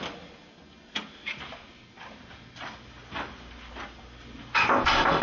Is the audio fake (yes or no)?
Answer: no